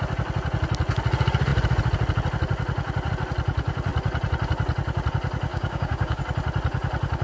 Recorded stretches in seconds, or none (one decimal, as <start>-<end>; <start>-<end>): 0.0-5.5; 6.2-7.2

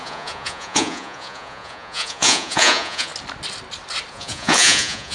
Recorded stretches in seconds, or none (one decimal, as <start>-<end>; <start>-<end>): 3.1-4.1

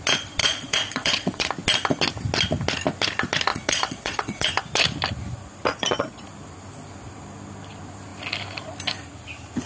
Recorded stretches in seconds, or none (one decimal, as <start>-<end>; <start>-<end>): 0.0-0.4; 1.5-3.5; 4.5-5.7; 6.2-9.7

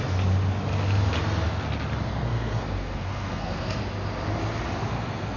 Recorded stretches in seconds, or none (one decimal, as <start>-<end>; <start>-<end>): 0.0-2.1; 3.8-4.9

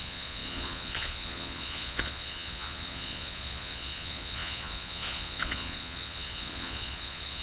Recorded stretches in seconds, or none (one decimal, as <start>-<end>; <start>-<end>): none

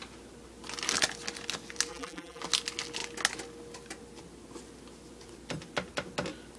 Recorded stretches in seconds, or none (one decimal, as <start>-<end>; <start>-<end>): 0.0-1.9; 2.4-6.6

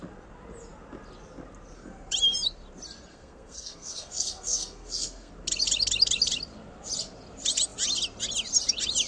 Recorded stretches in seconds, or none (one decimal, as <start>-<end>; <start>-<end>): 0.0-3.1; 5.3-9.1

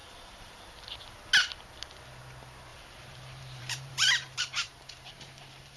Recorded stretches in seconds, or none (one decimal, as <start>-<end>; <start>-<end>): 0.5-2.7